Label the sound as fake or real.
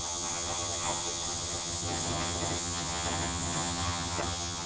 fake